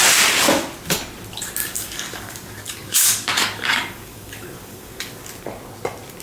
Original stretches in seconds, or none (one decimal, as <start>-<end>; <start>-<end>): 0.0-1.6; 5.3-6.2